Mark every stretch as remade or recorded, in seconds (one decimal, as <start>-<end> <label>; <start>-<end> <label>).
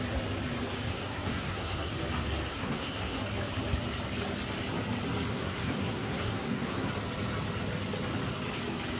0.0-0.9 recorded; 0.9-1.9 remade; 1.9-2.5 recorded; 2.5-3.2 remade; 3.2-5.3 recorded; 5.3-6.9 remade; 6.9-9.0 recorded